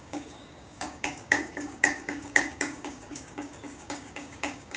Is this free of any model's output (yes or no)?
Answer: no